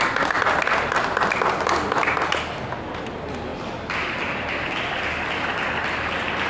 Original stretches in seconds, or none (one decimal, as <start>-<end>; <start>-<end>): 0.0-6.5